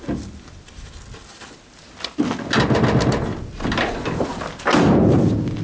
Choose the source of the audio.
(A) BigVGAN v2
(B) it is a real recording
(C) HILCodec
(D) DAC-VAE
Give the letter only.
B